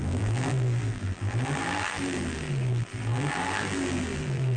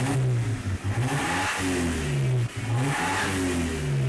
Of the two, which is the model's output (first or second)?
first